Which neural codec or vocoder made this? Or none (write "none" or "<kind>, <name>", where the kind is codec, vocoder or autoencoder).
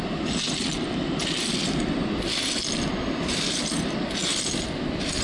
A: none